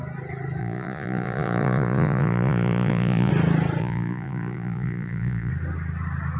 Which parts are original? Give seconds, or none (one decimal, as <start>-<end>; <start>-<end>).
0.0-0.6; 3.3-3.8; 5.5-6.4